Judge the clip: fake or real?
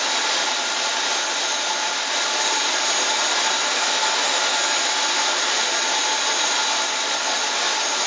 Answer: real